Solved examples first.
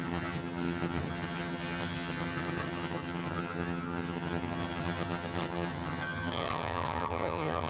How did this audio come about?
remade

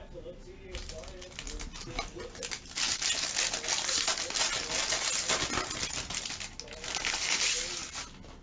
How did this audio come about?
recorded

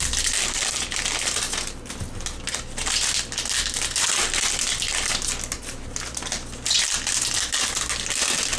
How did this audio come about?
recorded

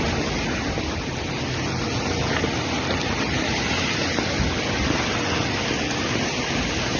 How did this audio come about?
recorded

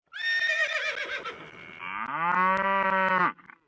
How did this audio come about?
recorded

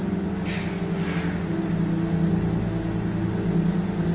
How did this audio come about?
recorded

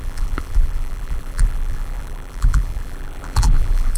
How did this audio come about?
remade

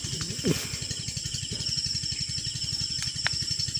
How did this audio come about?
recorded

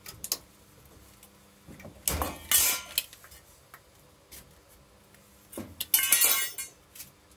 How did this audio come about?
recorded